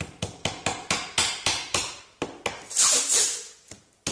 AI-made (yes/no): no